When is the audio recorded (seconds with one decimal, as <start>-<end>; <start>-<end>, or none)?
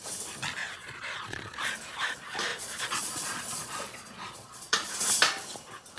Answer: 0.0-0.6; 1.6-2.5; 4.9-6.0